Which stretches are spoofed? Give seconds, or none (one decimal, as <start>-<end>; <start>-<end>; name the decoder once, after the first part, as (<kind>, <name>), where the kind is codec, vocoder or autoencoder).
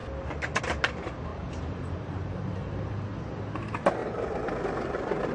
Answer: 1.3-3.6 (vocoder, BigVGAN v2)